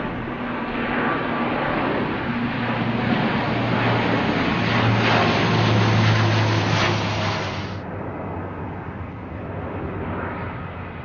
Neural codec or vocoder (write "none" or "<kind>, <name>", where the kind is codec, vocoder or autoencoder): none